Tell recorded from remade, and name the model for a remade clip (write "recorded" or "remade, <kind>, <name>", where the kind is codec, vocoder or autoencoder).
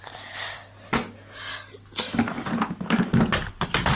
recorded